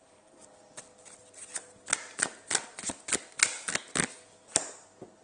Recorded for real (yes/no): yes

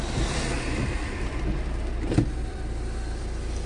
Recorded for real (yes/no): no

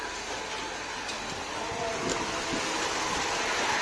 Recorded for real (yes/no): yes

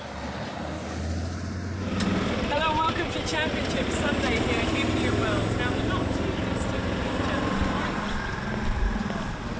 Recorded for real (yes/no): yes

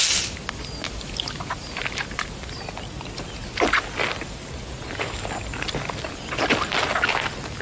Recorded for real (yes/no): yes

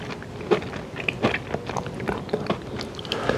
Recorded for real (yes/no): yes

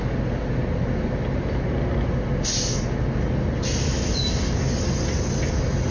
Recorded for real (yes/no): yes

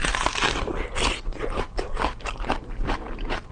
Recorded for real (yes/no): no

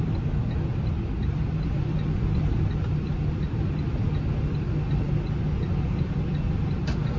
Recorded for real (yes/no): yes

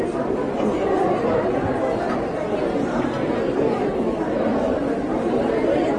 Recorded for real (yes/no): yes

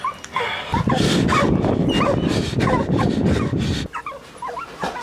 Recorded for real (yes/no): yes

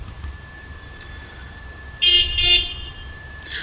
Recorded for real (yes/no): no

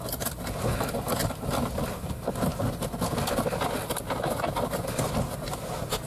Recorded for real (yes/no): yes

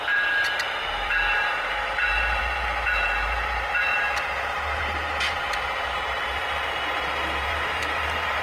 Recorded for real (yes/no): no